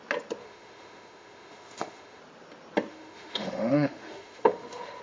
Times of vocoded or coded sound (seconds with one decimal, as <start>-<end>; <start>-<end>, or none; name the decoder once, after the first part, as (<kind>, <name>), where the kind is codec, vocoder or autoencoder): 0.4-2.2 (autoencoder, DAC-VAE); 2.9-5.0